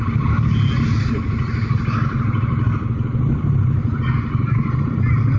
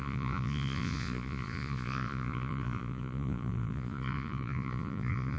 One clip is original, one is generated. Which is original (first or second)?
first